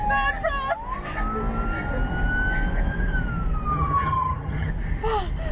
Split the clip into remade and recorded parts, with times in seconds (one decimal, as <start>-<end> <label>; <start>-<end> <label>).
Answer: 0.0-3.7 recorded; 3.7-4.7 remade; 4.7-5.5 recorded